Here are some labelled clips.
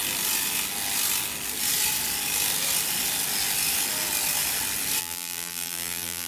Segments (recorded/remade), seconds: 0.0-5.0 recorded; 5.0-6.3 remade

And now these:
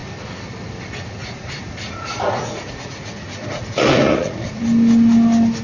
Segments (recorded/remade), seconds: 0.0-1.2 recorded; 1.2-4.6 remade; 4.6-5.6 recorded